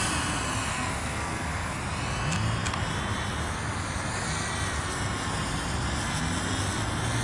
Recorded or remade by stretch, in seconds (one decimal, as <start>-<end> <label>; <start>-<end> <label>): 0.0-0.7 recorded; 0.7-1.8 remade; 1.8-7.2 recorded

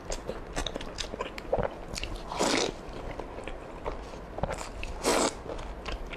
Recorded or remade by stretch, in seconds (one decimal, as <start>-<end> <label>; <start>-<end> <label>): 0.0-6.2 recorded

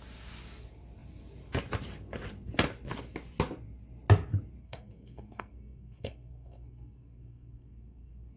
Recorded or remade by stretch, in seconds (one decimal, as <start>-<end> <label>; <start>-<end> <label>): 0.0-4.6 recorded; 4.6-8.4 remade

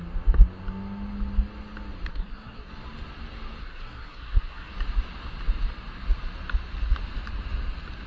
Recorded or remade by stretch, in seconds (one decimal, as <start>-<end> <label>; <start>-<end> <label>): 0.0-2.1 recorded; 2.1-2.7 remade; 2.7-3.6 recorded; 3.6-4.7 remade; 4.7-8.1 recorded

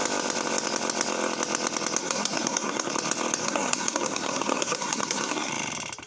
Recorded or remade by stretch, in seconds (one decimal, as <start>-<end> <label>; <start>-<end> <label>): 0.0-2.0 recorded; 2.0-2.9 remade; 2.9-3.4 recorded; 3.4-5.5 remade; 5.5-6.1 recorded

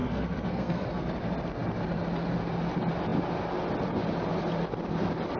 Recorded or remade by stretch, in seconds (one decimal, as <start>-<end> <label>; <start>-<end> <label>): 0.0-1.1 remade; 1.1-5.4 recorded

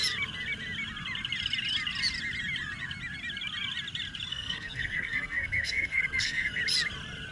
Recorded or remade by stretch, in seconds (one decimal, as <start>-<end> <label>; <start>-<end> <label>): 0.0-4.3 recorded; 4.3-6.6 remade; 6.6-7.3 recorded

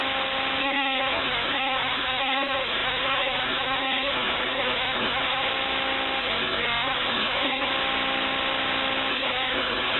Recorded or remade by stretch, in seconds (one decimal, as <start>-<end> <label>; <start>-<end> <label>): 0.0-0.6 recorded; 0.6-5.5 remade; 5.5-6.2 recorded; 6.2-7.7 remade; 7.7-9.1 recorded; 9.1-10.0 remade